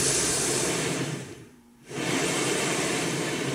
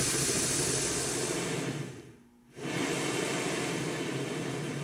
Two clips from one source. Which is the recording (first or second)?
second